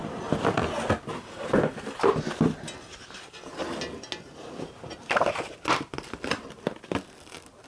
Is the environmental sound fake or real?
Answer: real